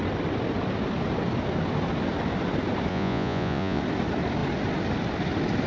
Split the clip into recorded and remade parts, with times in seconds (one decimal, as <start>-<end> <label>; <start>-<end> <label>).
0.0-2.9 recorded; 2.9-3.8 remade; 3.8-5.7 recorded